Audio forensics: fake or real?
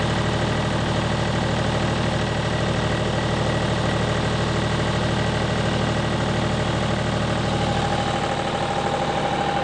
real